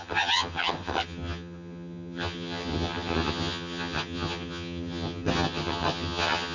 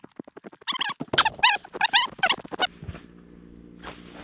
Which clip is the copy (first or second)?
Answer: first